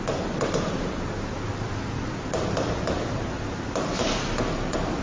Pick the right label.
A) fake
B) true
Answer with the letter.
B